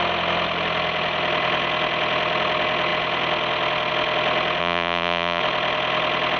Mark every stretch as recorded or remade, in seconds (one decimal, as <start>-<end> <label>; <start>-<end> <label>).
0.0-4.6 recorded; 4.6-5.4 remade; 5.4-6.4 recorded